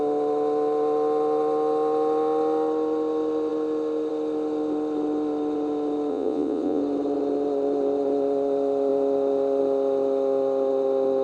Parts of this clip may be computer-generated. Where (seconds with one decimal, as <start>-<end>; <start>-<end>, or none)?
6.1-6.8